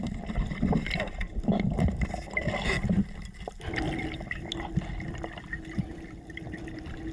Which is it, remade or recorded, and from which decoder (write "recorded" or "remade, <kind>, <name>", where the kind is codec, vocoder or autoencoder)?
recorded